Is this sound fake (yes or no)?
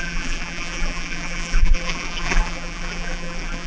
yes